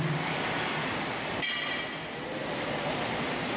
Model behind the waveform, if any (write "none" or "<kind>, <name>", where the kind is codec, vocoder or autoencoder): none